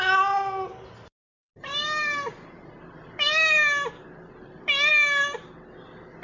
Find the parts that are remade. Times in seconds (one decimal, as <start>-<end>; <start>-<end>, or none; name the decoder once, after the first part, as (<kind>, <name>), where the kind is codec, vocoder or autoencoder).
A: none